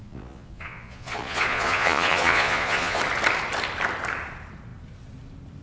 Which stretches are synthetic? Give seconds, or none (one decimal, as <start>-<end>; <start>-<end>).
0.0-3.0